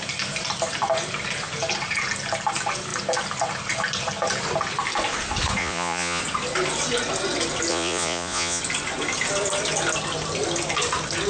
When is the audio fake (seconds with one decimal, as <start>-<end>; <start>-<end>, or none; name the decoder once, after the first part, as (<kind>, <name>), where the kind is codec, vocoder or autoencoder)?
5.6-6.2 (vocoder, Vocos); 7.7-8.6